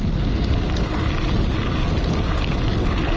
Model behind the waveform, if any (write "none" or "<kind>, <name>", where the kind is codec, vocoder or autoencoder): none